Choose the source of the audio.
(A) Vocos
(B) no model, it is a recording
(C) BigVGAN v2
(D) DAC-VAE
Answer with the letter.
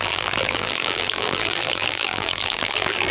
C